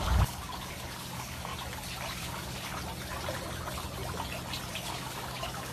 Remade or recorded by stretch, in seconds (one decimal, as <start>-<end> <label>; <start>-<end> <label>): 0.0-1.5 remade; 1.5-2.1 recorded; 2.1-2.7 remade; 2.7-4.7 recorded; 4.7-5.7 remade